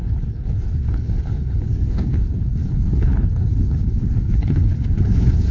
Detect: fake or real fake